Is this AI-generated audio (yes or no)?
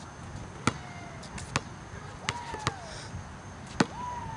no